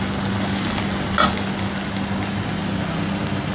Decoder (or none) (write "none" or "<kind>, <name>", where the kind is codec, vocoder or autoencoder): none